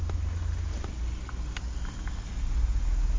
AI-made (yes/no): no